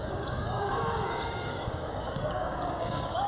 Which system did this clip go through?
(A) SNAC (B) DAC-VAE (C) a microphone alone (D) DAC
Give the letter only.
D